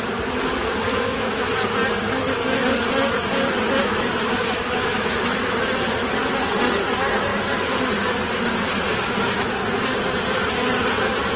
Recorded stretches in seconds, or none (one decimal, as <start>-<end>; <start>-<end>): 0.0-0.9; 1.5-3.8; 5.3-11.4